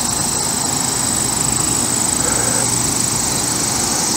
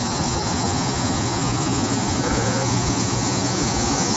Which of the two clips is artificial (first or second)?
second